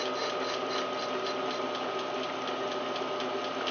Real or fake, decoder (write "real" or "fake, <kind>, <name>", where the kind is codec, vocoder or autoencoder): real